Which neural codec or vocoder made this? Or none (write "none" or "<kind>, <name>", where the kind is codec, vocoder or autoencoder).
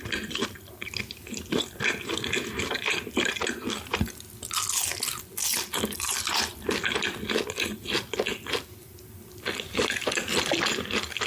none